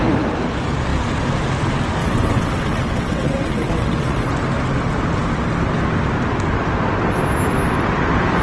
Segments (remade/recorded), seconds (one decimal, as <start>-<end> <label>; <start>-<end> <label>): 0.0-2.0 recorded; 2.0-4.3 remade; 4.3-8.4 recorded